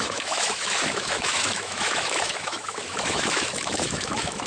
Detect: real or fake fake